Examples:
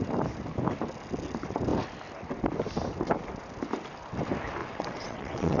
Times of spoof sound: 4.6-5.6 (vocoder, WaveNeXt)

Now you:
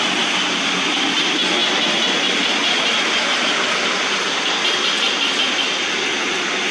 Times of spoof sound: none